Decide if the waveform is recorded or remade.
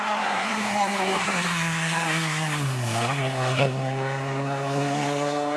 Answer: remade